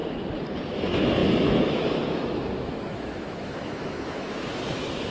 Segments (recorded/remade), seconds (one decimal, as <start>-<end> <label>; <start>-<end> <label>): 0.0-0.7 recorded; 0.7-5.1 remade